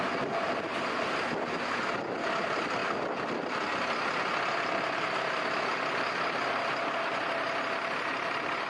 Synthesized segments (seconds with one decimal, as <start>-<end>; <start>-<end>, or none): none